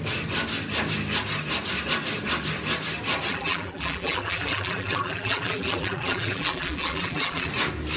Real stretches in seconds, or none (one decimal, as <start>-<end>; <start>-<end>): 0.0-3.3; 7.5-8.0